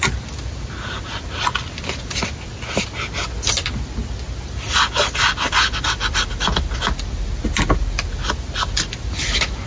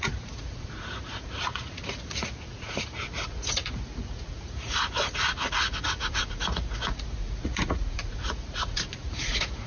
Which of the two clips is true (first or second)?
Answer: first